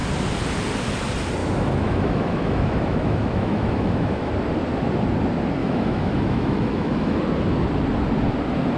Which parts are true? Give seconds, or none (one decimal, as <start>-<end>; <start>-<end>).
0.0-1.4; 4.3-5.6; 7.2-8.8